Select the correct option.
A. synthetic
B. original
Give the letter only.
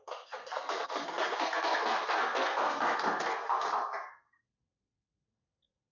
A